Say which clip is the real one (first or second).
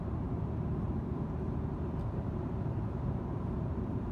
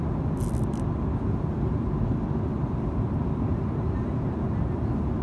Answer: second